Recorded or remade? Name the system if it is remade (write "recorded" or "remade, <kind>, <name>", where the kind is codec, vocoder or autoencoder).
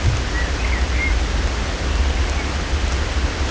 recorded